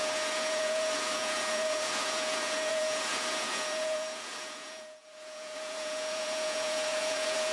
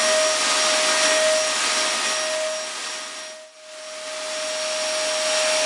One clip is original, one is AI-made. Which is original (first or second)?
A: second